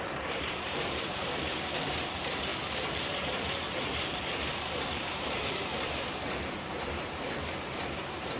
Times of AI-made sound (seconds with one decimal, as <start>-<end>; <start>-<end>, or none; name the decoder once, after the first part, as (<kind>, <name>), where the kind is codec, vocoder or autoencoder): 0.0-2.5 (vocoder, BigVGAN v2); 4.4-8.4